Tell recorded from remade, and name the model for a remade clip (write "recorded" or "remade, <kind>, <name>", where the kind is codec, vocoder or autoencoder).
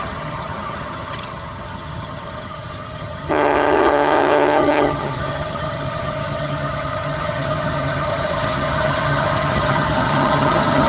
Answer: remade, vocoder, HiFi-GAN